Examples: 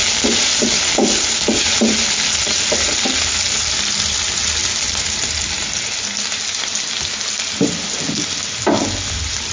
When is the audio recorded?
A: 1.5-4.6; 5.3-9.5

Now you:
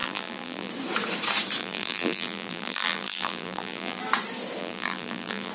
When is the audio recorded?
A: 0.7-1.6; 4.0-4.6

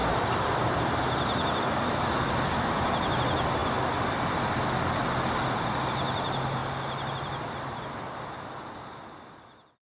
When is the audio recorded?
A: 0.0-9.9

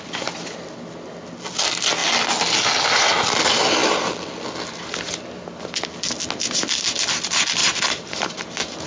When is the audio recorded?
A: 0.0-7.6; 8.4-8.9

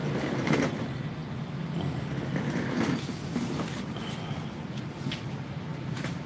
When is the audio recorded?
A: 0.7-5.7

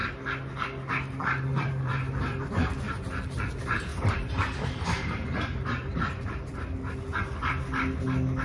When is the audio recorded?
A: 0.0-1.5; 2.5-3.9; 6.5-8.4

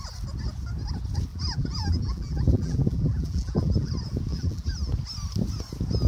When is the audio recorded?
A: 0.0-1.3; 3.9-4.3; 4.9-6.1